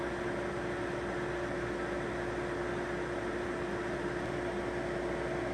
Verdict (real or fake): real